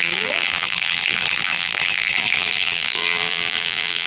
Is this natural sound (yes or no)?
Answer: no